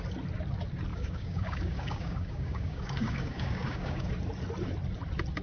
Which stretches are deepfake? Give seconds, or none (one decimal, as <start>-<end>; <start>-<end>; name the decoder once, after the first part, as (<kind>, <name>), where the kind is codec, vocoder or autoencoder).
0.9-4.1 (codec, DAC)